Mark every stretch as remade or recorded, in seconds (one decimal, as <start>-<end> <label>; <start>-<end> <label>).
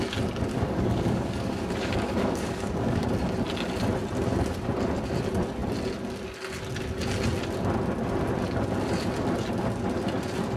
0.0-0.5 recorded; 0.5-3.1 remade; 3.1-10.6 recorded